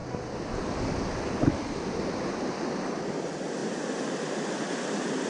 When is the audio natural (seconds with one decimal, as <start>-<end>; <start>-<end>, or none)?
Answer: 0.0-5.3